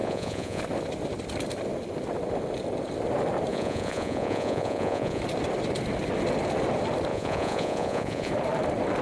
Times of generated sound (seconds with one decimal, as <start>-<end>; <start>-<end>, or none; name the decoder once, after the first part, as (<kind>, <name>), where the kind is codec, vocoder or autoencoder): 0.0-0.6 (vocoder, Vocos); 3.5-5.2; 7.1-8.3